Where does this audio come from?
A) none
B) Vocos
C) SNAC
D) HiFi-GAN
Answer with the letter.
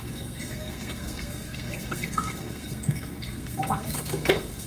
C